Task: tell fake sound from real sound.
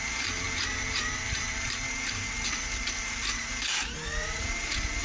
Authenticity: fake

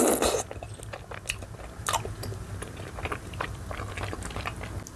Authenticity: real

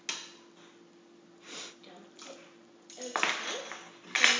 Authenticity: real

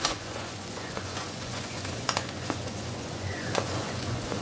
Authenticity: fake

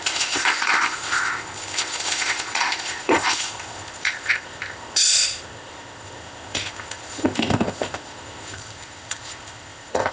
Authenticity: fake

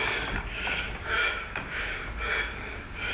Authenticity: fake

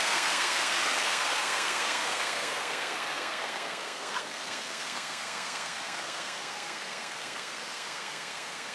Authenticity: fake